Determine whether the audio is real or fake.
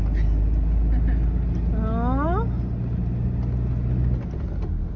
real